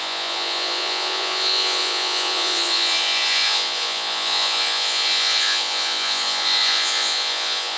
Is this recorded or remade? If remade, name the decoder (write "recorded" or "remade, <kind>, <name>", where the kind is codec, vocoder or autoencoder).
remade, vocoder, Vocos